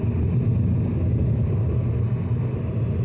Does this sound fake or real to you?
real